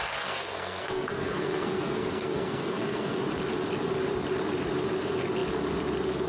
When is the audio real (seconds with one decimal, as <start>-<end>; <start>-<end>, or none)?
3.2-6.3